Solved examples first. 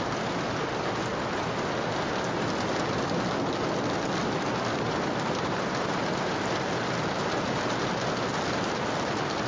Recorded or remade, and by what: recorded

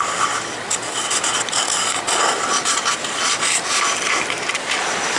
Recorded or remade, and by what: recorded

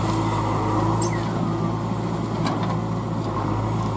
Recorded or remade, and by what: recorded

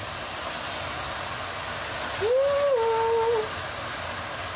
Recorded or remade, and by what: recorded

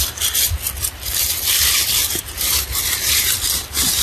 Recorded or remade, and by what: recorded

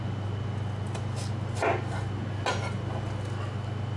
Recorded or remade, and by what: recorded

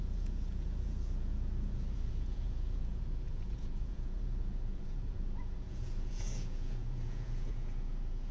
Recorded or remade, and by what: remade, vocoder, Vocos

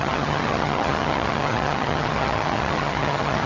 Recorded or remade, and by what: remade, vocoder, HiFi-GAN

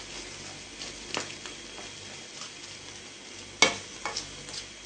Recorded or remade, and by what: recorded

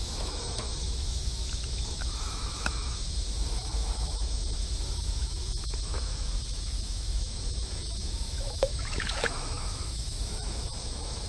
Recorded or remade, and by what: remade, autoencoder, DAC-VAE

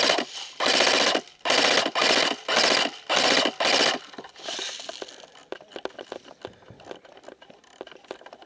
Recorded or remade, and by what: recorded